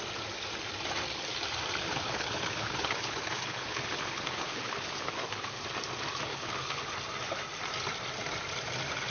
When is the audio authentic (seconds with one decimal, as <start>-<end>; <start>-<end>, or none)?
0.0-1.8; 5.6-6.3; 6.8-9.1